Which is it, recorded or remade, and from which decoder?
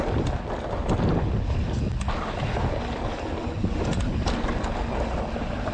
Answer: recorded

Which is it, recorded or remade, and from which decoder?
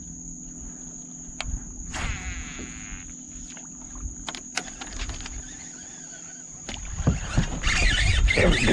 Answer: recorded